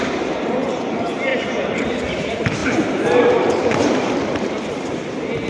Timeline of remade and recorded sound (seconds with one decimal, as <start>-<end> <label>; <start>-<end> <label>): 0.0-2.6 remade; 2.6-3.2 recorded; 3.2-5.5 remade